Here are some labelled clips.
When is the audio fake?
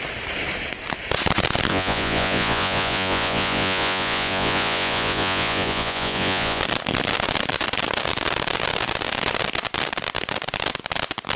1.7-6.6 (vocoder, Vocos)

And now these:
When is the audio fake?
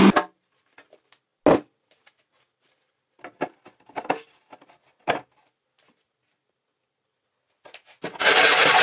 none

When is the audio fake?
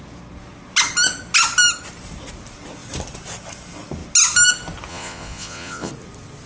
4.9-5.9 (vocoder, Vocos)